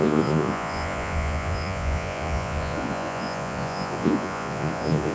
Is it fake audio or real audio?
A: fake